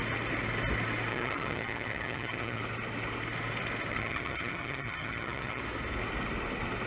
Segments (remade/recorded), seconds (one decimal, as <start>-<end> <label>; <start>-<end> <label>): 0.0-1.1 recorded; 1.1-2.6 remade; 2.6-3.9 recorded; 3.9-5.6 remade; 5.6-6.9 recorded